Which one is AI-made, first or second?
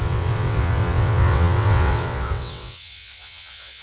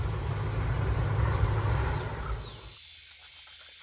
first